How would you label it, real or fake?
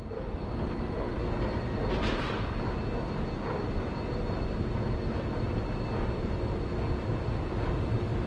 real